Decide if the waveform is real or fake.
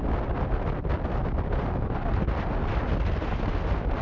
real